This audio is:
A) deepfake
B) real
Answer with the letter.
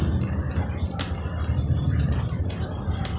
B